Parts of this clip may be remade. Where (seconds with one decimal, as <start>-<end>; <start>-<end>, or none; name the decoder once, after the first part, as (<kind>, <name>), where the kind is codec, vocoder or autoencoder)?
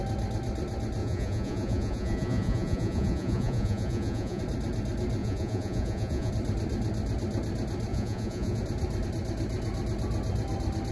1.0-4.4 (vocoder, Vocos); 5.2-6.3; 7.9-8.6